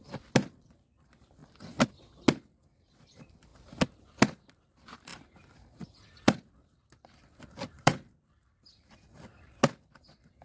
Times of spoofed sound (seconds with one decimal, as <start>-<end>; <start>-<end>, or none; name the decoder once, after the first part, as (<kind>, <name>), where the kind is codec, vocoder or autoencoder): 0.0-1.4 (vocoder, BigVGAN v2); 2.8-3.5; 4.0-10.4